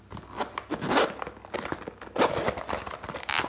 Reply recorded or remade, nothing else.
recorded